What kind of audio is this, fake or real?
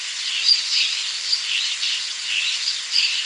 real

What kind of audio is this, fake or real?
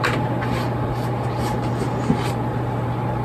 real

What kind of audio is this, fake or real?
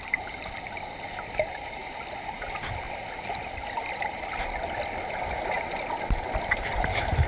real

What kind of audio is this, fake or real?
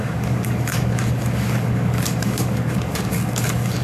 fake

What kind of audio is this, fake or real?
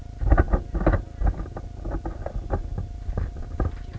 real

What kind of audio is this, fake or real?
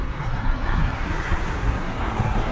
fake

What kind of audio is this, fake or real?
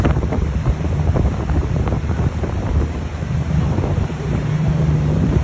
fake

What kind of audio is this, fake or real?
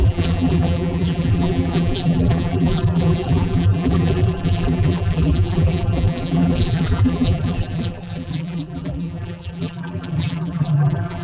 fake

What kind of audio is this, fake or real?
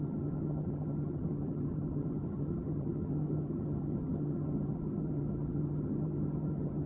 fake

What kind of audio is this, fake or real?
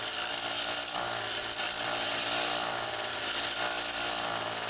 fake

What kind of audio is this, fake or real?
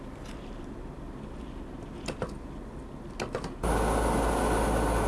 real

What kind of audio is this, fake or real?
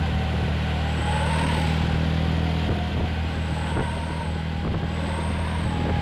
real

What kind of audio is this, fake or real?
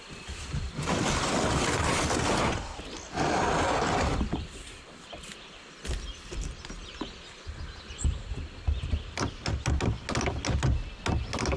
real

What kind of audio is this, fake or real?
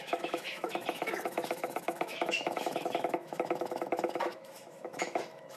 fake